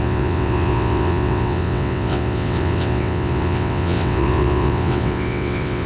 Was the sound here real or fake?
fake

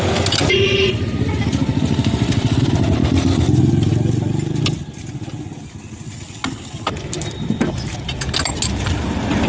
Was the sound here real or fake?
real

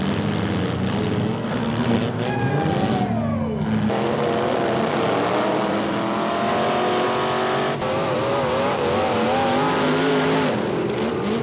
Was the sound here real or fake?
real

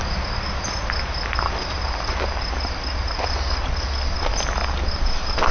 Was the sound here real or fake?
real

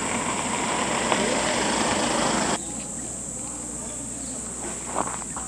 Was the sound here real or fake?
real